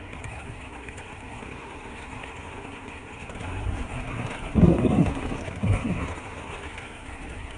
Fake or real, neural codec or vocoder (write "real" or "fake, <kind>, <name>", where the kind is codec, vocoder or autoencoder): fake, codec, SNAC